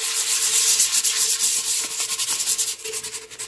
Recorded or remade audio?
recorded